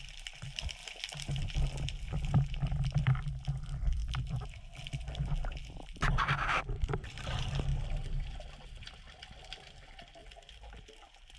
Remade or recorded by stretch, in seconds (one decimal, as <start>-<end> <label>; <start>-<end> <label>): 0.0-0.8 remade; 0.8-1.4 recorded; 1.4-7.7 remade; 7.7-9.4 recorded; 9.4-10.2 remade; 10.2-10.9 recorded; 10.9-11.4 remade